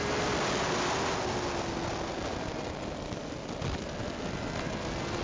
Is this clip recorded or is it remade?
recorded